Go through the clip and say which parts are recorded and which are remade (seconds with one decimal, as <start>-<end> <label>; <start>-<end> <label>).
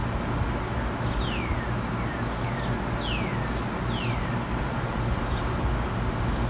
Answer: 0.0-6.5 recorded